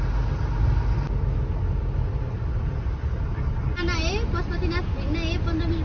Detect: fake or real real